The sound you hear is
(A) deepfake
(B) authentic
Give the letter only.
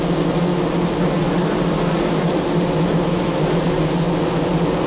B